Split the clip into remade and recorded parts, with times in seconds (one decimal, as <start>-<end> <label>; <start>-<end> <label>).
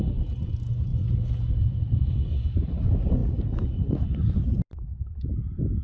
0.0-0.9 recorded; 0.9-2.1 remade; 2.1-3.2 recorded; 3.2-4.3 remade; 4.3-5.8 recorded